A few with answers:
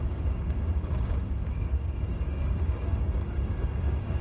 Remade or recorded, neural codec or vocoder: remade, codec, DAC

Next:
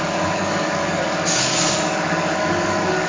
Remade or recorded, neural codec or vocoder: remade, codec, DAC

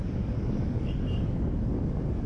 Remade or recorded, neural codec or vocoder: remade, codec, DAC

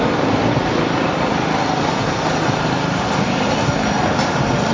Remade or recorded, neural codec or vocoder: recorded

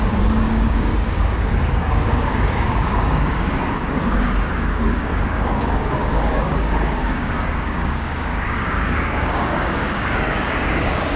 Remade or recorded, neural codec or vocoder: remade, codec, DAC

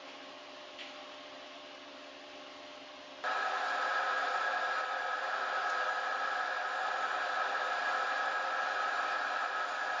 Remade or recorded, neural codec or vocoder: recorded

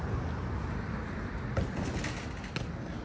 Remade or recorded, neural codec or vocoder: recorded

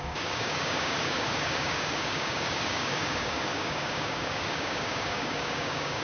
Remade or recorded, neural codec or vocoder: remade, codec, DAC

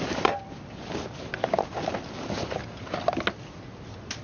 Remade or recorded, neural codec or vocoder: recorded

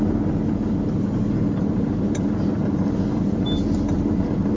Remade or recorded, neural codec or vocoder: recorded